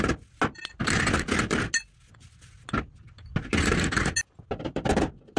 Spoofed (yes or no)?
no